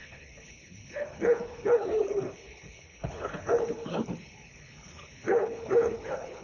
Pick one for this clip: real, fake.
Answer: fake